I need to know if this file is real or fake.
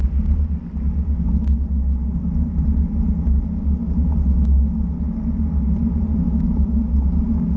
real